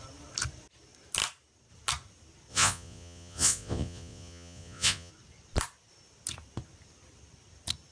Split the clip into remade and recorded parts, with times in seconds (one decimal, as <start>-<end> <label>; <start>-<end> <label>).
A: 0.0-2.5 recorded; 2.5-5.1 remade; 5.1-7.9 recorded